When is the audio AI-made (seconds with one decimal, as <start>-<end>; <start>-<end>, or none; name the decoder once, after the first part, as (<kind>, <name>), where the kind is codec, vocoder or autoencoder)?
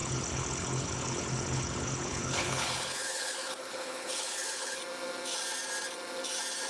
0.0-4.8 (codec, HILCodec)